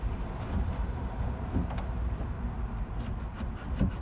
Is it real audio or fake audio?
real